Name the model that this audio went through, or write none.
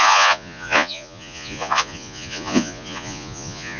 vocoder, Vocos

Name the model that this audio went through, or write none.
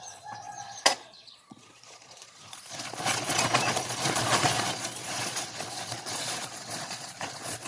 vocoder, Vocos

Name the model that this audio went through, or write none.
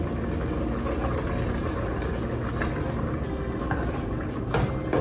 none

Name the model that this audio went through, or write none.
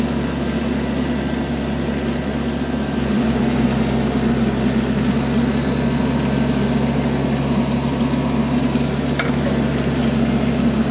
none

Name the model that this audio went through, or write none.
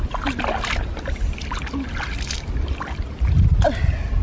none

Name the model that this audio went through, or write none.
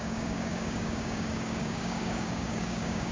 codec, DAC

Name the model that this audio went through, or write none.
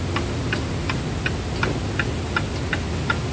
none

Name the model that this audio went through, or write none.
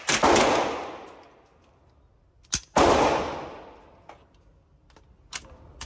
none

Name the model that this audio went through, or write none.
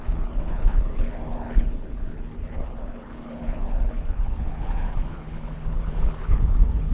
codec, HILCodec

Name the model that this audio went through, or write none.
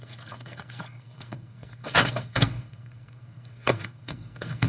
codec, SNAC